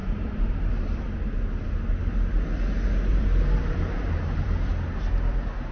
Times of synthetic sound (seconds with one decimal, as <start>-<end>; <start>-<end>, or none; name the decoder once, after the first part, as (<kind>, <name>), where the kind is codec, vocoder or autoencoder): 0.0-0.7 (vocoder, BigVGAN v2); 3.1-4.7